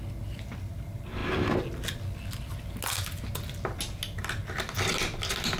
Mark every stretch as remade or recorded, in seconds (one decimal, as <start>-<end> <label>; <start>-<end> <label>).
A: 0.0-5.6 recorded